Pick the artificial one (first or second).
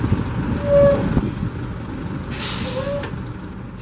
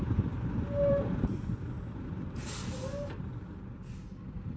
second